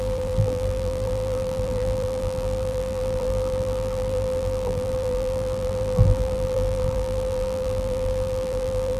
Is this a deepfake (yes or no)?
yes